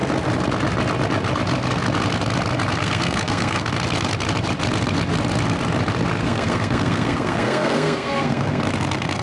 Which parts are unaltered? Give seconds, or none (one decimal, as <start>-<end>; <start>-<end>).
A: 0.0-2.8; 3.7-6.2; 8.6-9.2